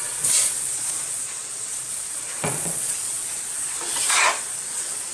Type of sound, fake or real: fake